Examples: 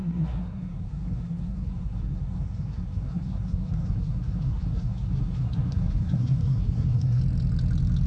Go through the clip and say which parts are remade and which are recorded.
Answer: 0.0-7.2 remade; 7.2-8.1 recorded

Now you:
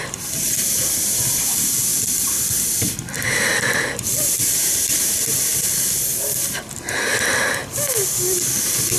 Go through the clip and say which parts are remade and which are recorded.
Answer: 0.0-9.0 recorded

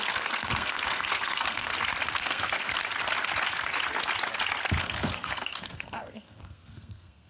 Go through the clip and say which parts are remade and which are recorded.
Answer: 0.0-1.7 remade; 1.7-2.2 recorded; 2.2-2.7 remade; 2.7-4.8 recorded; 4.8-7.3 remade

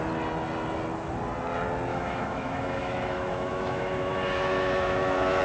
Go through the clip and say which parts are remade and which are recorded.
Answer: 0.0-1.9 recorded; 1.9-5.4 remade

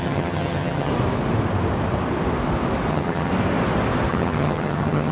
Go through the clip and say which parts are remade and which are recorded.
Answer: 0.0-0.9 remade; 0.9-2.9 recorded; 2.9-3.3 remade; 3.3-4.1 recorded; 4.1-5.1 remade

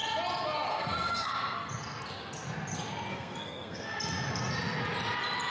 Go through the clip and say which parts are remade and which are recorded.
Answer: 0.0-0.7 recorded; 0.7-1.7 remade; 1.7-3.1 recorded; 3.1-4.0 remade; 4.0-5.5 recorded

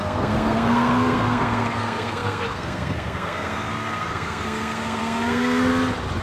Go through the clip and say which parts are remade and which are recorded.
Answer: 0.0-5.7 remade; 5.7-6.2 recorded